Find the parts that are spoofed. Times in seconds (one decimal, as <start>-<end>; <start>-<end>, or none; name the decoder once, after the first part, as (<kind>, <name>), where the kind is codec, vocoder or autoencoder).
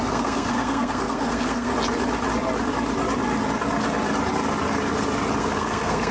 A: 0.0-1.7 (codec, SNAC); 5.4-6.1